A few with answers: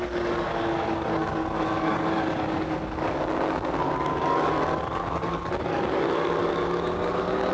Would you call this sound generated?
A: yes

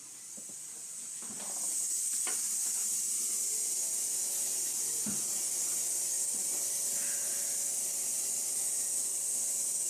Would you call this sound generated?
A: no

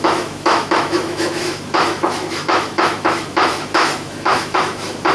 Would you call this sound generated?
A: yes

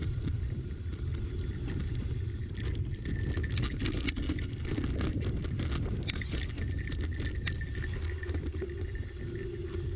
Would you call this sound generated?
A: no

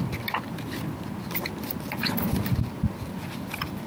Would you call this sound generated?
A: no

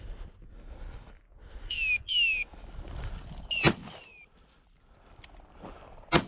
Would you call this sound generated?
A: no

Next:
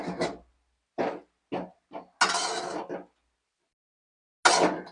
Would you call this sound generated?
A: no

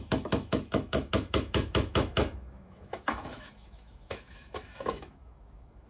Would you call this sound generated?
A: yes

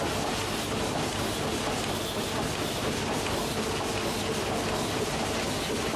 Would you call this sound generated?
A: no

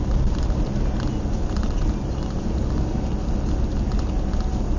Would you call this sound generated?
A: no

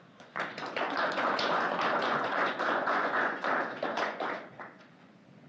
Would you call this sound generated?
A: yes